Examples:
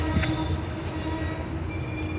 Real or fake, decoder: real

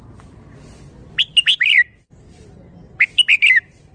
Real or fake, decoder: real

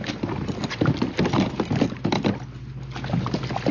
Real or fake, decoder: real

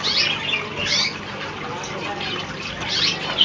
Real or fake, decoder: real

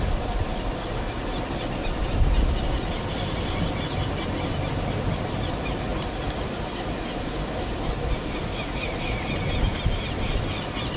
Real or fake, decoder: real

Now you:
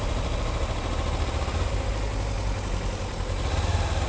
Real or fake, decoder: real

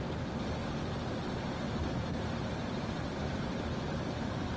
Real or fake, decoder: fake, vocoder, BigVGAN v2